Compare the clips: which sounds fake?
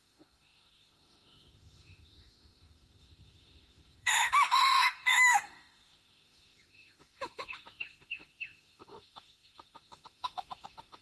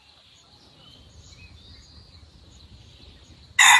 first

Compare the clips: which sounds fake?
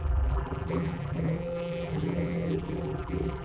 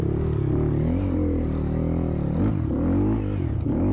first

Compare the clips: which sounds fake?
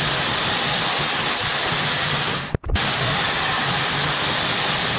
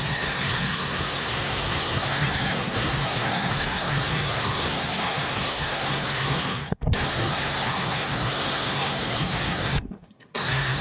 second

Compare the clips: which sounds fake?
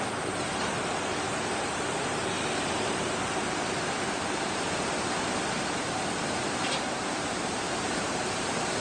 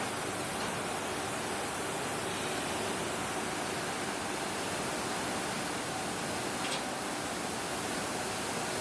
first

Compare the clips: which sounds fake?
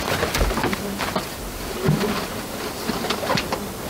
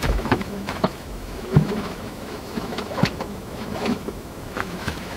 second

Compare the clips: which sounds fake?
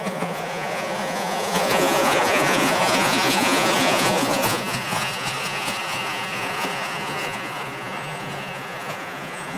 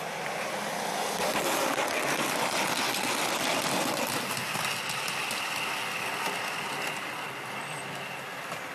first